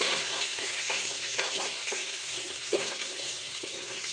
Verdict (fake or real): fake